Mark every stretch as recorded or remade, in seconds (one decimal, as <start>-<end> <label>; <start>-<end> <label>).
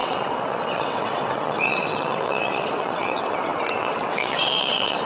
0.0-5.0 remade